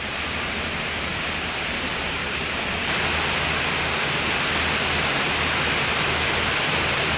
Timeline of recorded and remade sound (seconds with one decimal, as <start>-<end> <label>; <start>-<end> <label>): 0.0-7.2 recorded